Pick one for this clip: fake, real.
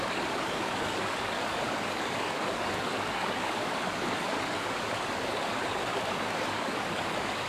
fake